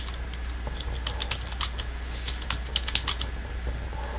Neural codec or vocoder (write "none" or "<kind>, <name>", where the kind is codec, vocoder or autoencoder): none